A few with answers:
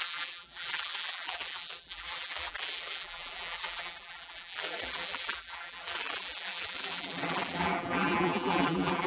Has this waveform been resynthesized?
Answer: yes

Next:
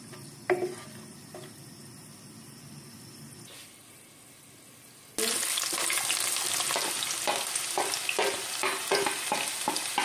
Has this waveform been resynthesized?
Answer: no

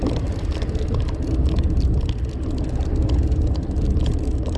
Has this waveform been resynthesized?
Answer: yes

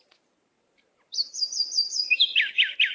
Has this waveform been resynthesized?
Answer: yes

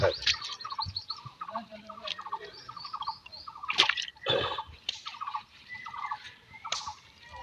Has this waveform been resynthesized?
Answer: yes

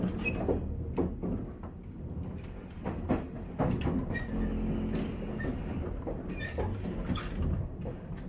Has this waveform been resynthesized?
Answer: no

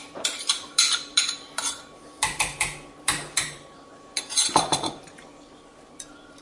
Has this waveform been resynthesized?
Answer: yes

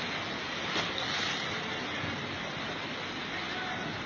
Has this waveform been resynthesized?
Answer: no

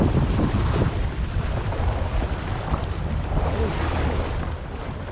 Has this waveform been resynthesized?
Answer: yes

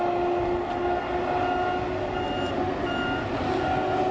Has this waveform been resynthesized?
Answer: no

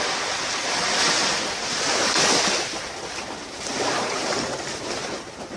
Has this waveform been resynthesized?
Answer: no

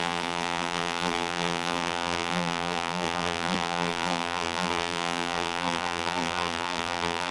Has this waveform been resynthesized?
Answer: yes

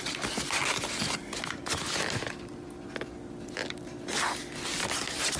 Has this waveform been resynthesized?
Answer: no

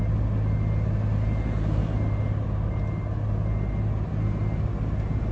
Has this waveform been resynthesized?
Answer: no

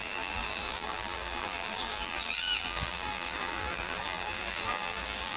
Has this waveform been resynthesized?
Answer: yes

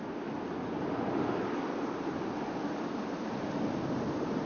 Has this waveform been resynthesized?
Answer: no